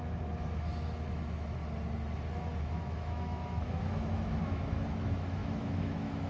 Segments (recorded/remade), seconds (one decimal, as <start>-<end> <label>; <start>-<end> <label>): 0.0-1.6 remade; 1.6-2.6 recorded; 2.6-6.3 remade